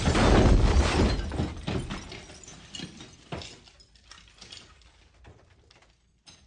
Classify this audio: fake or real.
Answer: real